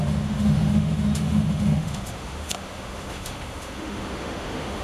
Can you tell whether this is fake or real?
fake